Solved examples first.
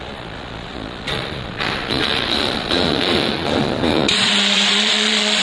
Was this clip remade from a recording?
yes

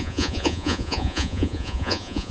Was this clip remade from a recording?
yes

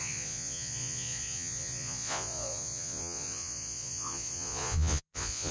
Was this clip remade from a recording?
yes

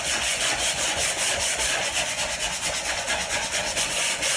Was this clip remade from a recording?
yes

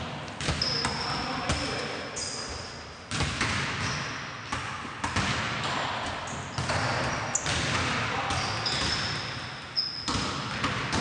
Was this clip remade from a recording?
no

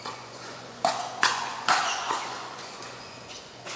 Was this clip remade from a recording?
yes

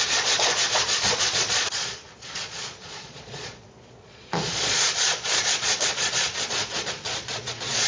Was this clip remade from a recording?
yes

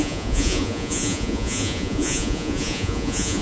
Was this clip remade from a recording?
yes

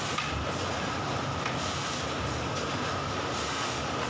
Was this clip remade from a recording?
no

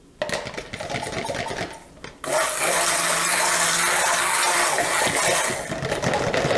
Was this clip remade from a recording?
no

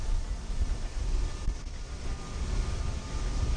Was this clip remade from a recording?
no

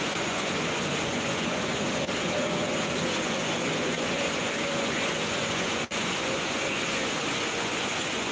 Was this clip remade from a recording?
yes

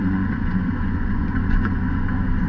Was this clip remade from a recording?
yes